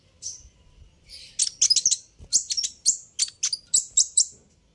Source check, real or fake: real